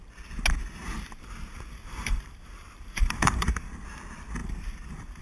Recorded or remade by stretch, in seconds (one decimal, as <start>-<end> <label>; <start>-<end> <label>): 0.0-0.6 recorded; 0.6-3.7 remade; 3.7-4.4 recorded; 4.4-5.2 remade